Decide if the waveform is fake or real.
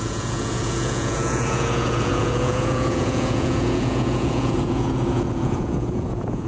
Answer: fake